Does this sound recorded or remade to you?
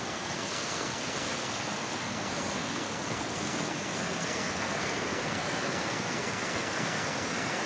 remade